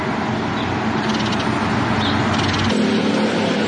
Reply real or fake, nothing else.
real